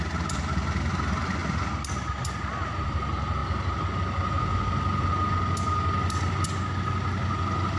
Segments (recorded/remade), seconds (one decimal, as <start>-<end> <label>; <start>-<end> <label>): 0.0-7.8 recorded